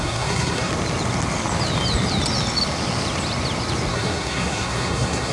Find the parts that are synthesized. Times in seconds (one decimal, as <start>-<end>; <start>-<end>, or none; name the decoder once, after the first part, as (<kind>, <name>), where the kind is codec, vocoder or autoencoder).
0.0-0.7 (codec, SNAC); 3.9-5.3